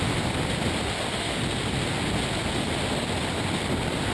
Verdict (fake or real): real